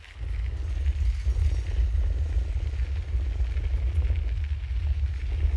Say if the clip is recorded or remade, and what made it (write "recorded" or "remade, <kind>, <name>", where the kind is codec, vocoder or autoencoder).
recorded